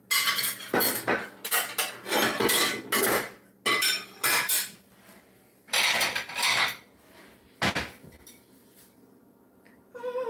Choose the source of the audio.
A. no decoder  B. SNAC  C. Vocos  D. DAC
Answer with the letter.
A